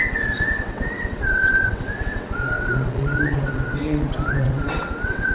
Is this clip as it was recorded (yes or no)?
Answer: no